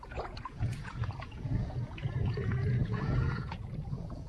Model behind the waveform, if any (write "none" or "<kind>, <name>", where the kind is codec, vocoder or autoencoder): vocoder, Vocos